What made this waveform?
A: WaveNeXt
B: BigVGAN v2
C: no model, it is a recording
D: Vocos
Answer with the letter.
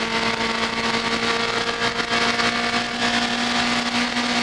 C